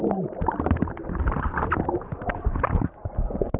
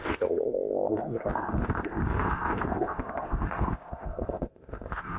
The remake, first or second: second